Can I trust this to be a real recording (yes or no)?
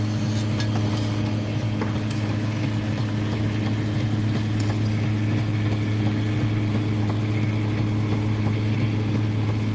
yes